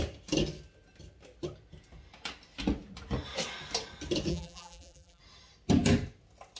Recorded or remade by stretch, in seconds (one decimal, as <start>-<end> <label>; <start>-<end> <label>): 0.0-4.3 recorded; 4.3-5.2 remade; 5.2-6.6 recorded